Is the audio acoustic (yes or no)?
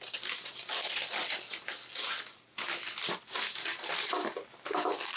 yes